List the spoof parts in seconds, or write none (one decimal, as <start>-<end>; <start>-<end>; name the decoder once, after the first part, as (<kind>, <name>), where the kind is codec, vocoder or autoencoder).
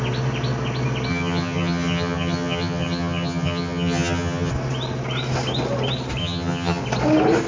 1.1-4.5 (vocoder, HiFi-GAN); 6.2-6.8